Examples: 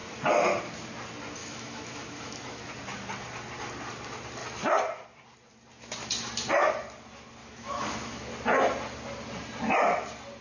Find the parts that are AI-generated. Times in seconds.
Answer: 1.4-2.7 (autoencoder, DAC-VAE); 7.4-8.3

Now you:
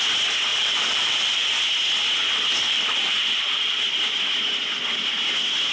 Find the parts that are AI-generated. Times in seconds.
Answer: 0.5-1.6 (vocoder, BigVGAN v2); 2.2-3.8

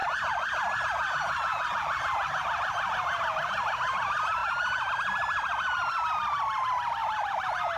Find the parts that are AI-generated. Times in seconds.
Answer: 1.5-2.4 (vocoder, BigVGAN v2); 7.0-7.8

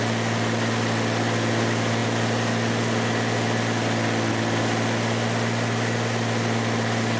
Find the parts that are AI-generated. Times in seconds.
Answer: none

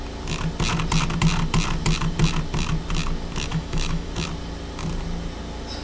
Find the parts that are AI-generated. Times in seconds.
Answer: 3.5-4.1 (autoencoder, DAC-VAE)